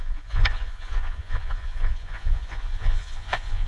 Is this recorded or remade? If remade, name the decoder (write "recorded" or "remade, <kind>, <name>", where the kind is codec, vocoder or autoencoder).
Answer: remade, vocoder, Vocos